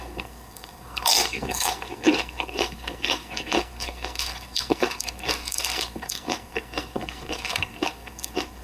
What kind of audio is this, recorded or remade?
remade